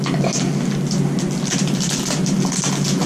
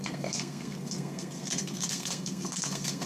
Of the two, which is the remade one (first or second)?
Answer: second